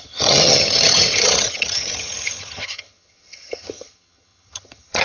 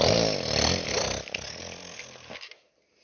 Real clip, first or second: second